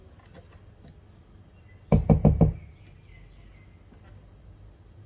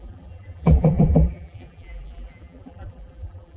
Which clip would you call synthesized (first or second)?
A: second